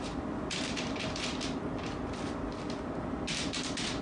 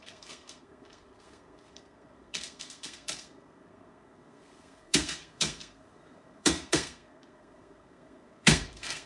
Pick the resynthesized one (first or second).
second